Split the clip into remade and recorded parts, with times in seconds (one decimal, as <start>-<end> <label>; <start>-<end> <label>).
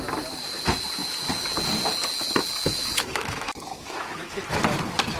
0.0-2.6 recorded; 2.6-4.4 remade; 4.4-5.2 recorded